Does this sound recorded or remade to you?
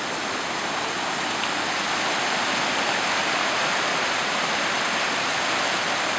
recorded